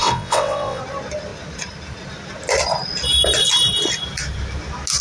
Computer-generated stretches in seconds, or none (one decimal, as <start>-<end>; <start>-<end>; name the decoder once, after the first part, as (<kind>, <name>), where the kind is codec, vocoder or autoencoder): 0.0-0.8 (vocoder, WaveNeXt)